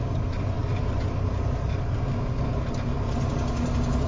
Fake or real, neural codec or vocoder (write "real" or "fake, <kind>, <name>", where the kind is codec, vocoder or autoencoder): real